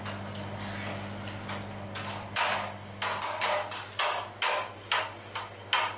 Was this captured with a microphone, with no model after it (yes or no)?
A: yes